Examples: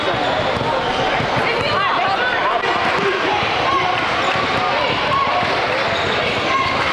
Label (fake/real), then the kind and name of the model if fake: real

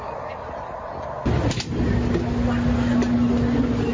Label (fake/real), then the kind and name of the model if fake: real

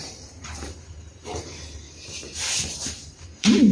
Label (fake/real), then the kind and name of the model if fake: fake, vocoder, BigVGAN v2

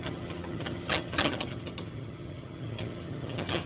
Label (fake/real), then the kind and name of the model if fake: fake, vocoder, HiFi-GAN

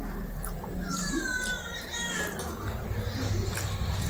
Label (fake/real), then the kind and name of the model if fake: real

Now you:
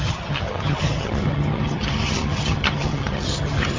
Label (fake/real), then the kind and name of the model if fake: fake, vocoder, HiFi-GAN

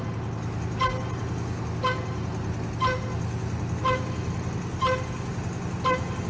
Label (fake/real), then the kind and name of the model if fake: real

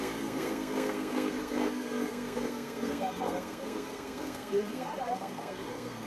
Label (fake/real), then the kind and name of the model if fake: fake, codec, SNAC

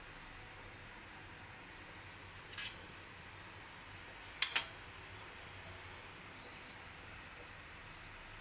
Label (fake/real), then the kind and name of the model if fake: real